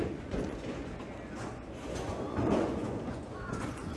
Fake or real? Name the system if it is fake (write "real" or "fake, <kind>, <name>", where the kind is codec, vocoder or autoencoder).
fake, vocoder, Vocos